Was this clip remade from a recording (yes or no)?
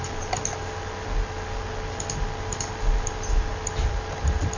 no